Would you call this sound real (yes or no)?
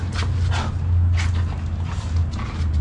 yes